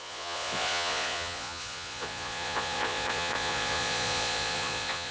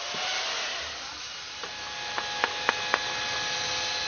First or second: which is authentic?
second